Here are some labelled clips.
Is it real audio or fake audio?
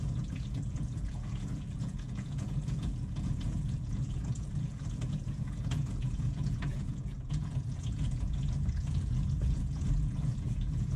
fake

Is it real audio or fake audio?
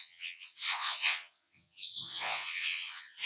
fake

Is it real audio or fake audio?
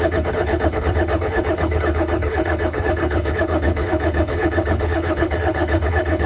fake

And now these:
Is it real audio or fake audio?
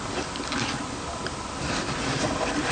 real